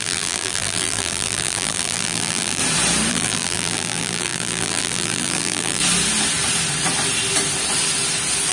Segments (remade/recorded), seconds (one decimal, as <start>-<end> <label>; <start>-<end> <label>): 0.0-2.6 remade; 2.6-3.1 recorded; 3.1-5.8 remade; 5.8-8.5 recorded